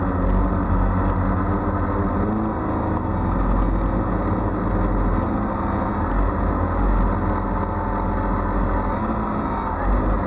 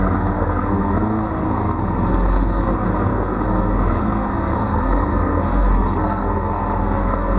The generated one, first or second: second